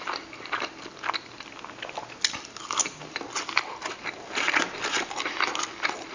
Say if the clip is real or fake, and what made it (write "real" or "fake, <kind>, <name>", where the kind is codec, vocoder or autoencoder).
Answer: real